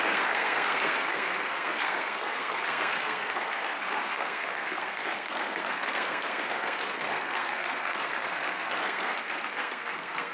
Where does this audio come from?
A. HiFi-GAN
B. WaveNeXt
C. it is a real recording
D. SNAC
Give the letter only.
D